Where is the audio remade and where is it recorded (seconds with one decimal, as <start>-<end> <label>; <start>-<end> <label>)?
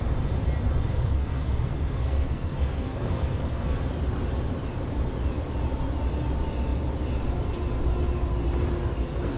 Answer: 0.0-0.9 recorded; 0.9-3.8 remade; 3.8-8.8 recorded; 8.8-9.4 remade